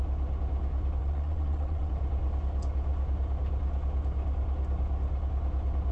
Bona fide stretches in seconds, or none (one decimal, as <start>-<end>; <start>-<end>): 0.0-1.0; 1.9-5.9